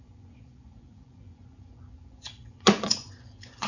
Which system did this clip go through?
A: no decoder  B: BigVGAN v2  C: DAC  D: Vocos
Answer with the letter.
D